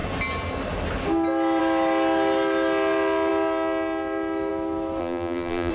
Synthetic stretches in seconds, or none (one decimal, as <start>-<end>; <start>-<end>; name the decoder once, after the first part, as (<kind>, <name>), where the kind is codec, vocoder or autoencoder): 5.0-5.7 (vocoder, BigVGAN v2)

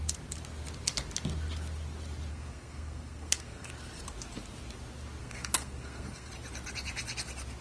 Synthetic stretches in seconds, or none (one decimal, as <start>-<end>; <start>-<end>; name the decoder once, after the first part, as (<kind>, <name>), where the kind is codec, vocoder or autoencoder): 2.3-3.7 (codec, SNAC); 5.2-6.3